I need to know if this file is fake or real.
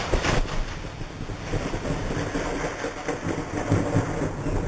real